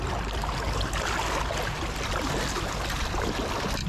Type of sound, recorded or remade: recorded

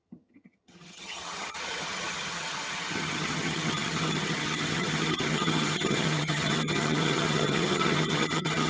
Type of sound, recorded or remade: remade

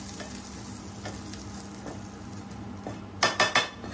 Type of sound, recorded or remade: recorded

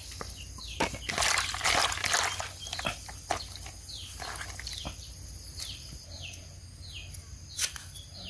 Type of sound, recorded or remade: recorded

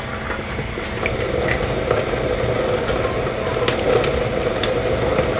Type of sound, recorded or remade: recorded